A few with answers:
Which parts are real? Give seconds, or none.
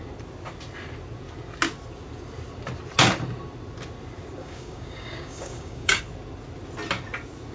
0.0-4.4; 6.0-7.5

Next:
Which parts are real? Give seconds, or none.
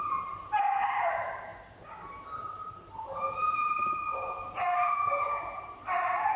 0.0-3.4; 5.1-6.4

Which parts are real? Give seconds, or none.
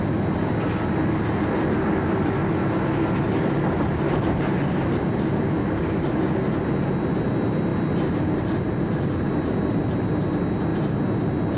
0.0-11.6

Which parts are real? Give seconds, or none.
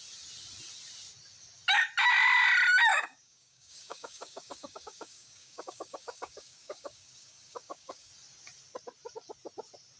0.0-2.9; 8.1-10.0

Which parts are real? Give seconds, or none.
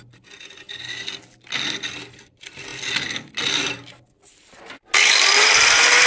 0.0-6.1